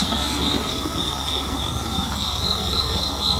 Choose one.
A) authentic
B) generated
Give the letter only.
B